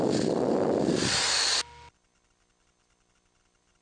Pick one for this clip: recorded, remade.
recorded